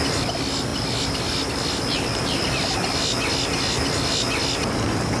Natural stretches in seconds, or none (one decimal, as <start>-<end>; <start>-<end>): 0.0-5.2